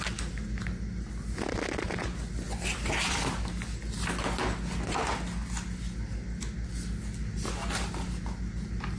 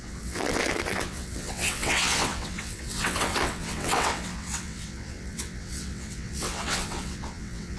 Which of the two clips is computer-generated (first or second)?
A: second